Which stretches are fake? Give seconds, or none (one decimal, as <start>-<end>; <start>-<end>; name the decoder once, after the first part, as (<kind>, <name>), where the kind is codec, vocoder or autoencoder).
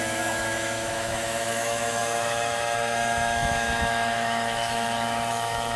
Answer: 0.0-5.8 (autoencoder, DAC-VAE)